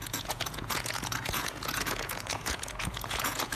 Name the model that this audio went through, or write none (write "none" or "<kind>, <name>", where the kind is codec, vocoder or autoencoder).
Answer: vocoder, Vocos